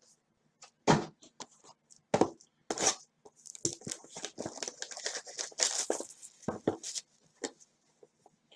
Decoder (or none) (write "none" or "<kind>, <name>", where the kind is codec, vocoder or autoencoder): none